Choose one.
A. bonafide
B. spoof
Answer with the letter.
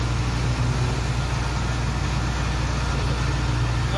A